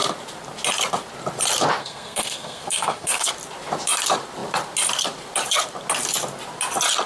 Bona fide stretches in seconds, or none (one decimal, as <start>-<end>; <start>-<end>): 0.0-1.8; 3.3-7.1